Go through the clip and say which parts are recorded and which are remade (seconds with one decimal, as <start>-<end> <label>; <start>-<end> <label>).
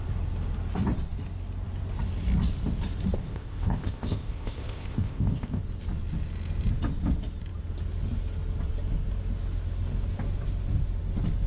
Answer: 0.0-3.2 recorded; 3.2-5.6 remade; 5.6-11.5 recorded